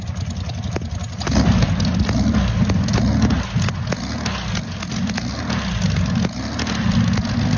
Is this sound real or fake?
real